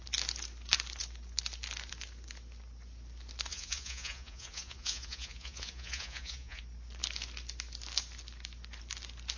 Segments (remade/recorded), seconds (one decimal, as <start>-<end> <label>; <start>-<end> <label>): 0.0-3.5 recorded; 3.5-6.6 remade; 6.6-9.4 recorded